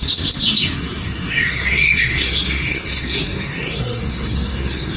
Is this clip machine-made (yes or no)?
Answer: yes